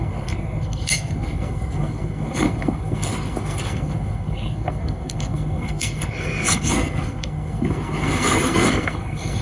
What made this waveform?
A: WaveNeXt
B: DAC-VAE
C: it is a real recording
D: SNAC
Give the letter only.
D